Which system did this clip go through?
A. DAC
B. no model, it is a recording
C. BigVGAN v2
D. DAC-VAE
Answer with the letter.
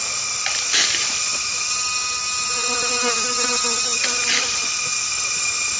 B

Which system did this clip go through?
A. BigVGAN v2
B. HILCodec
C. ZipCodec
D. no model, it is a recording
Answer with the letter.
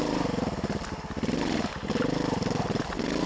D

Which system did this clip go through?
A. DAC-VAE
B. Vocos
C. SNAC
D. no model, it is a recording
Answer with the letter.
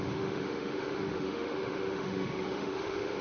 A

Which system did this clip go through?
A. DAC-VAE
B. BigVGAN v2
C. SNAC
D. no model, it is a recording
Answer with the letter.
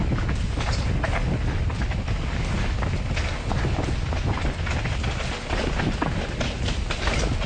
D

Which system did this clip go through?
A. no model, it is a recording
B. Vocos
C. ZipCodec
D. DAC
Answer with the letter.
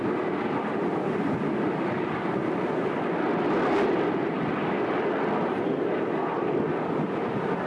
A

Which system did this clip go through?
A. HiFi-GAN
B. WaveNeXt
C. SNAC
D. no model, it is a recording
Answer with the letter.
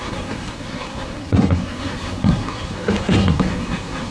C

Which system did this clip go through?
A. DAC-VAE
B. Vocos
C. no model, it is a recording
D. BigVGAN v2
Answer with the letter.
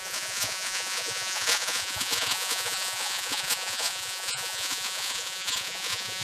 B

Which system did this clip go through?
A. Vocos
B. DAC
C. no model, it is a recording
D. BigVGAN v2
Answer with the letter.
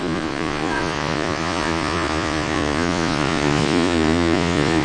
A